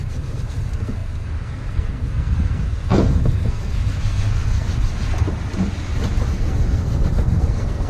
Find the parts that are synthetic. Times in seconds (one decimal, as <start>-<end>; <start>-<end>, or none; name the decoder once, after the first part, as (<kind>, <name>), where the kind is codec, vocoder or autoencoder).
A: 0.0-4.7 (codec, SNAC); 6.3-7.9